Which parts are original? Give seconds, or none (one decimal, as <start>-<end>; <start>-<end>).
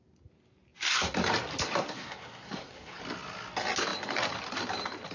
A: 0.0-1.8; 3.0-5.1